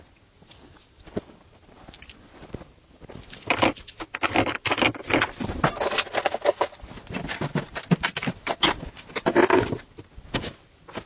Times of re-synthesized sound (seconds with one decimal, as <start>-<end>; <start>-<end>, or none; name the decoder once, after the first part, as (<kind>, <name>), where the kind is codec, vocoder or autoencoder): none